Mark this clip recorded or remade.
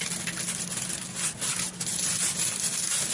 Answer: recorded